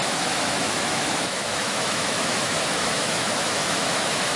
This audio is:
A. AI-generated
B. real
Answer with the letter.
A